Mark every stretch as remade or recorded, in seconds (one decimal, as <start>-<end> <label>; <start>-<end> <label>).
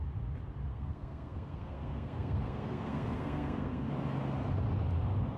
0.0-0.7 recorded; 0.7-3.9 remade; 3.9-5.4 recorded